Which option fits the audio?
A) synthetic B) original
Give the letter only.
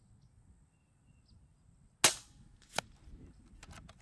B